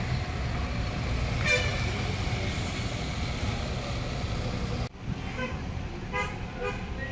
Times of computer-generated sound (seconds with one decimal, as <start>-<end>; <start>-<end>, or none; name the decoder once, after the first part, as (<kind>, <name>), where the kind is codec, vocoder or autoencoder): none